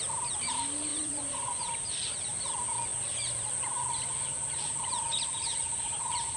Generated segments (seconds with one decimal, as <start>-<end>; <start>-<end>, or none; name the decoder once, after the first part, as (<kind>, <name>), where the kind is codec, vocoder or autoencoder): 0.9-1.6 (vocoder, Vocos)